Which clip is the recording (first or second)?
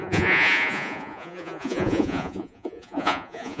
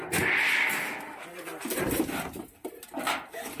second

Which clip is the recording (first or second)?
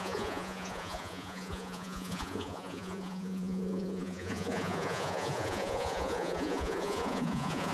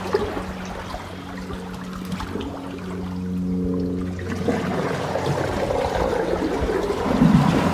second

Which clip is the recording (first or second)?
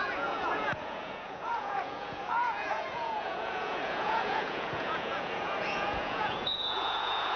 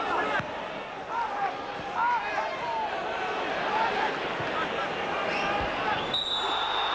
second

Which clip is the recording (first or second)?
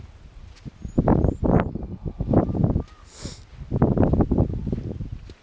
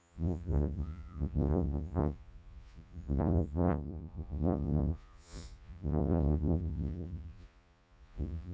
first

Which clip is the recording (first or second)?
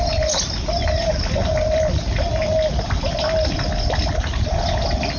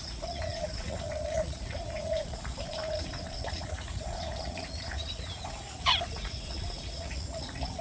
first